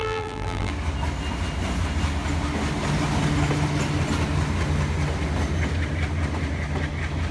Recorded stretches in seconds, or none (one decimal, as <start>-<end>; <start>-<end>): 0.7-7.3